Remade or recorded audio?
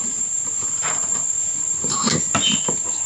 remade